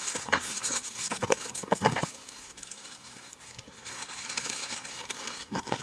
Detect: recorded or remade remade